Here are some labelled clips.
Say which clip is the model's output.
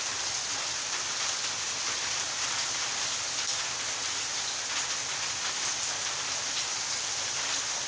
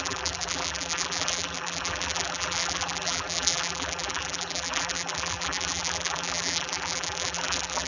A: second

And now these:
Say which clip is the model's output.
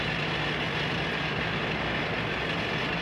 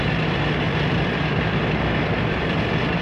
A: second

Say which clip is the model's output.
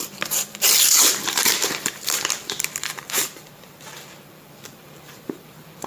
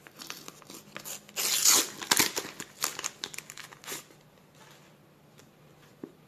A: first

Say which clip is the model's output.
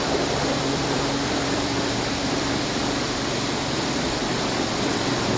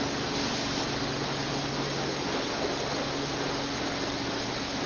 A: first